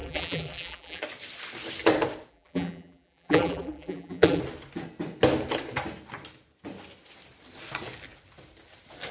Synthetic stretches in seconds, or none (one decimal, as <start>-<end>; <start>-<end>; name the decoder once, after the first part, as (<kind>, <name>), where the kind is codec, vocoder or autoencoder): 0.0-1.0 (vocoder, BigVGAN v2); 2.3-4.4